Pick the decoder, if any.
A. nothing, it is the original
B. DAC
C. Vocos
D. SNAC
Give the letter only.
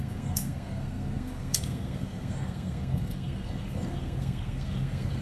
D